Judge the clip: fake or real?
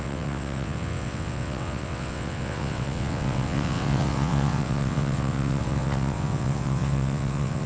fake